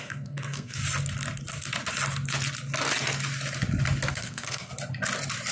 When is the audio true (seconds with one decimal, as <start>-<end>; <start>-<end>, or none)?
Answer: 0.8-4.1; 4.7-5.5

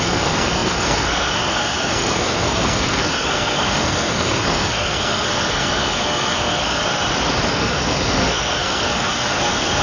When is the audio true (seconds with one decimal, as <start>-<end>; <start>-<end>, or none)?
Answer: 6.8-7.5

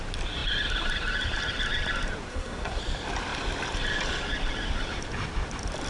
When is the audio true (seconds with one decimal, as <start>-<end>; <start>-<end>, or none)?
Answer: 0.0-2.3; 2.8-5.9

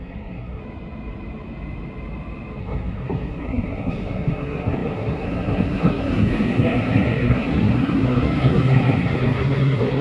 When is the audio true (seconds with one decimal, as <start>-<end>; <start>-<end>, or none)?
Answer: 0.6-2.6

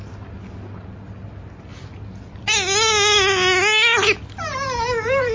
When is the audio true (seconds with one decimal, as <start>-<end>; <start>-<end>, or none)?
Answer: 0.0-5.3

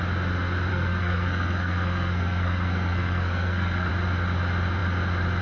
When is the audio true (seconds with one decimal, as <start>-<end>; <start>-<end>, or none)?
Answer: 0.0-0.7; 3.9-5.4

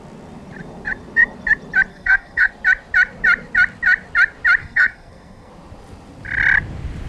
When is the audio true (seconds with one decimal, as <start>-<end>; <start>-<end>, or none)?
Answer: 0.0-1.9; 2.5-4.6; 5.5-7.1